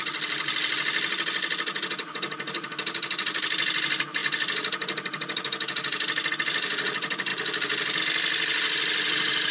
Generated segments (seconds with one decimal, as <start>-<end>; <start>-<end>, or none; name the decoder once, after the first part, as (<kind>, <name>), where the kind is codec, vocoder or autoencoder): none